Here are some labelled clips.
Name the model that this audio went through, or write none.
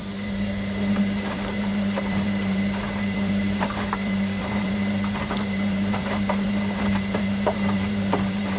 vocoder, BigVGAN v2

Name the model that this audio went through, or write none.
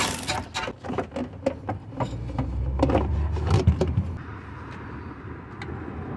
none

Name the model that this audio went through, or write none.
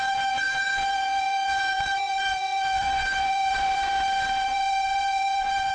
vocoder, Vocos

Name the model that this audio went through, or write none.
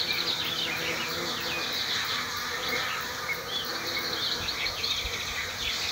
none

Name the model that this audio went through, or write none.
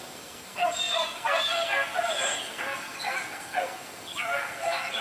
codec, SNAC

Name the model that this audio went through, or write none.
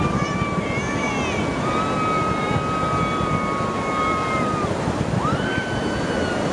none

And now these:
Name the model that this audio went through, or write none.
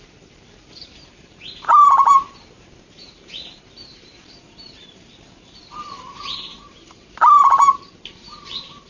vocoder, BigVGAN v2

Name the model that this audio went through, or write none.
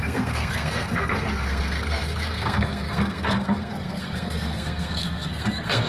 codec, SNAC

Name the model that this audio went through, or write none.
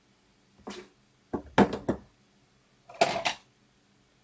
none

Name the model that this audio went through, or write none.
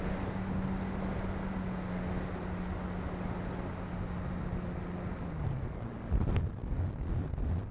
none